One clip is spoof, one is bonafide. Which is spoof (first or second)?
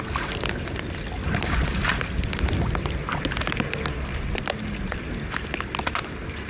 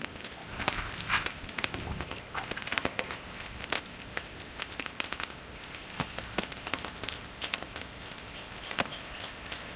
second